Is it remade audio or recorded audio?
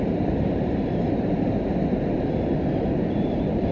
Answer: remade